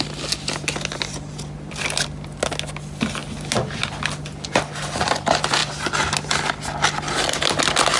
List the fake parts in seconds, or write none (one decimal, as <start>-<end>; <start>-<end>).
none